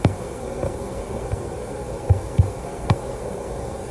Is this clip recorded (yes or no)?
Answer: no